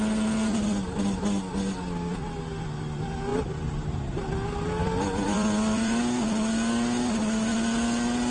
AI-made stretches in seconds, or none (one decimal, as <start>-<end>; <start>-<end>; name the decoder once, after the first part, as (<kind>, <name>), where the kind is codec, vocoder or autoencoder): 3.3-4.0 (vocoder, BigVGAN v2); 4.8-6.0